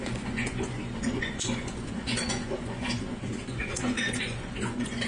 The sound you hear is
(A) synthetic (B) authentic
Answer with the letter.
A